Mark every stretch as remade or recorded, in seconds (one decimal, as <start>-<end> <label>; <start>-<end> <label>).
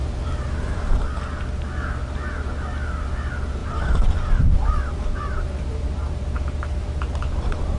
0.0-0.9 remade; 0.9-3.6 recorded; 3.6-7.8 remade